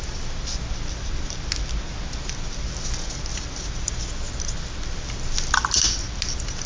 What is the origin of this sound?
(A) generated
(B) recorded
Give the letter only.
B